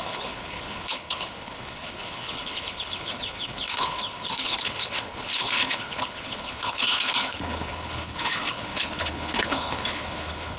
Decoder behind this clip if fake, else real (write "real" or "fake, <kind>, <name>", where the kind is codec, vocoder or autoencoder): fake, codec, HILCodec